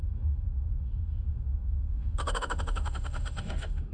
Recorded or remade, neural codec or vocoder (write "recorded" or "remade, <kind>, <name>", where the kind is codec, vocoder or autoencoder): remade, autoencoder, DAC-VAE